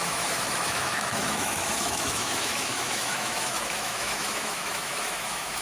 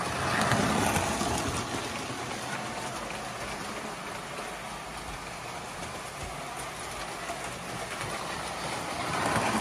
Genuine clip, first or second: second